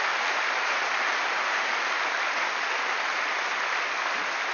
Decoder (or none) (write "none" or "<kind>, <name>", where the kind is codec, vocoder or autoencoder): vocoder, BigVGAN v2